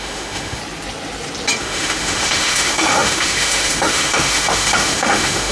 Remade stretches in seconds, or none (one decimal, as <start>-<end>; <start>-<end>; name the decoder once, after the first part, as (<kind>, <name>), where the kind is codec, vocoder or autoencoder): 0.0-0.6 (autoencoder, DAC-VAE); 1.6-5.5